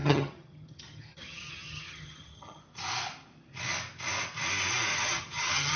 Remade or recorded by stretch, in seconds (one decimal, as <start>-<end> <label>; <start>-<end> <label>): 0.0-2.6 remade; 2.6-4.9 recorded; 4.9-5.8 remade